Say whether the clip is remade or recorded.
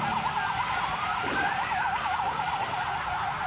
recorded